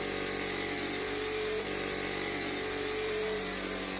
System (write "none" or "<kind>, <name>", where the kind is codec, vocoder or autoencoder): vocoder, BigVGAN v2